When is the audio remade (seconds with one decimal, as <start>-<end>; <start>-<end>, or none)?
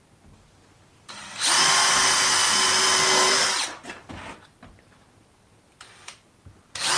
2.4-4.1